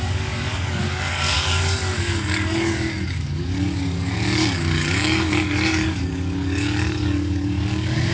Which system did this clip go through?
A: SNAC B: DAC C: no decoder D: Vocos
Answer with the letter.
B